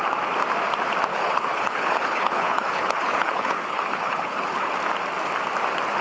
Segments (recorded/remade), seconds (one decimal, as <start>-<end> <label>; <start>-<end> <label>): 0.0-1.1 recorded; 1.1-4.7 remade; 4.7-6.0 recorded